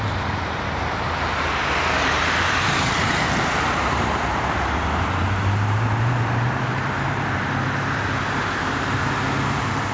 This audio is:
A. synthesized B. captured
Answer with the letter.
A